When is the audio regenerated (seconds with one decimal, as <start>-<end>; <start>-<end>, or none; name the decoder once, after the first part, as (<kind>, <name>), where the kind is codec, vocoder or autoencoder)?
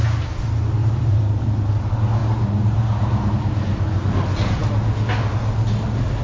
0.8-1.4 (vocoder, BigVGAN v2); 2.2-3.3